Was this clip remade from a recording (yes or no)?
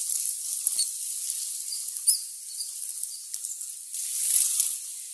no